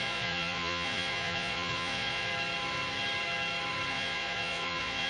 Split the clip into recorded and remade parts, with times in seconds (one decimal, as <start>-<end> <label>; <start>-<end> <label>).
0.0-2.3 remade; 2.3-3.9 recorded; 3.9-5.1 remade